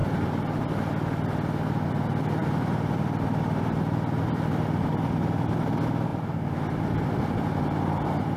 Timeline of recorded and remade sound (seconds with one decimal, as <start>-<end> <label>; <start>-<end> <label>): 0.0-8.4 recorded